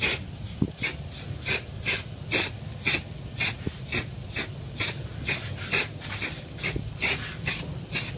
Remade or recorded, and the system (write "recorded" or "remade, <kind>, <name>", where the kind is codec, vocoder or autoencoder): recorded